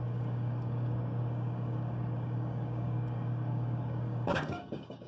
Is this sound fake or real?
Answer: fake